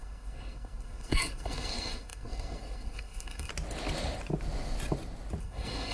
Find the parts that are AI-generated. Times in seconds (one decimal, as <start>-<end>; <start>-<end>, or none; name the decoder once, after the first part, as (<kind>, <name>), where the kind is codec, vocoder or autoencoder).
0.0-3.5 (codec, SNAC); 5.4-5.9